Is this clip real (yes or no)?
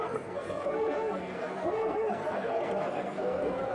no